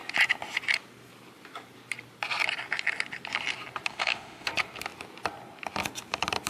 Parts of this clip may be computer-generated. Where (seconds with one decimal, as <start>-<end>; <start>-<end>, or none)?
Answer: 3.9-4.5